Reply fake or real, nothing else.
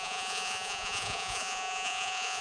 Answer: fake